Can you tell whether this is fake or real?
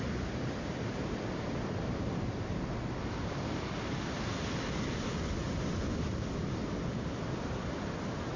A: real